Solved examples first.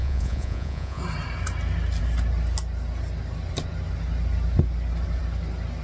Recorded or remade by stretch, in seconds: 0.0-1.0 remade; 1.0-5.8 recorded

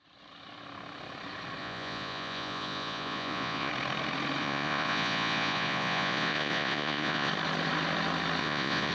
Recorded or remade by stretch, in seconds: 0.0-1.6 recorded; 1.6-3.7 remade; 3.7-4.4 recorded; 4.4-7.3 remade; 7.3-8.4 recorded; 8.4-8.9 remade